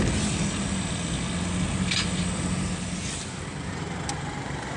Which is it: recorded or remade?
recorded